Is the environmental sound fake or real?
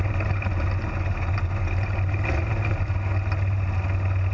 real